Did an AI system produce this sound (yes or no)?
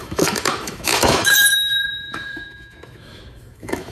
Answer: yes